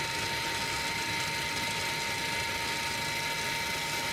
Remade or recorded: recorded